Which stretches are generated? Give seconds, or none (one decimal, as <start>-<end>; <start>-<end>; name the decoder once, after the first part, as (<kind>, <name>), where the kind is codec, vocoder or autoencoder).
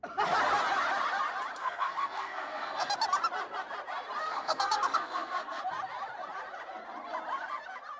1.6-2.9 (codec, SNAC); 4.2-5.6